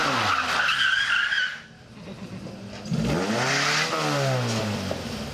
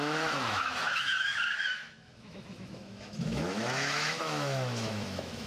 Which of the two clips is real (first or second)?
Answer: first